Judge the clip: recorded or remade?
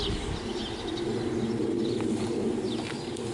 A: recorded